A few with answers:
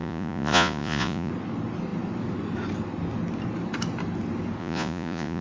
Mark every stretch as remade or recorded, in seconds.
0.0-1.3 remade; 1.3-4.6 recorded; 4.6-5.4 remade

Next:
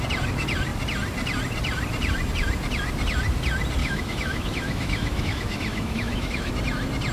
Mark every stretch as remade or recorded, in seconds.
0.0-3.8 recorded; 3.8-6.5 remade; 6.5-7.1 recorded

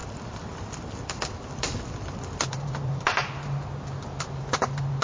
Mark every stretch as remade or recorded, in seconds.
0.0-3.0 remade; 3.0-4.1 recorded; 4.1-5.0 remade

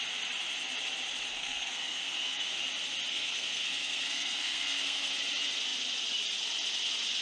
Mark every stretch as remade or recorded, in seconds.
0.0-1.3 recorded; 1.3-2.5 remade; 2.5-3.1 recorded; 3.1-5.1 remade; 5.1-7.2 recorded